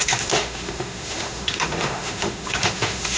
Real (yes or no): no